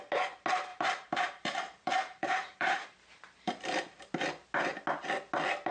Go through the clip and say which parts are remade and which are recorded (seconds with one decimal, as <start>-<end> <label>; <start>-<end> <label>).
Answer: 0.0-0.7 recorded; 0.7-4.1 remade; 4.1-5.7 recorded